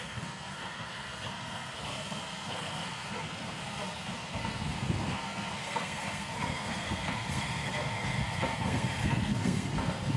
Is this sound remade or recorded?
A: remade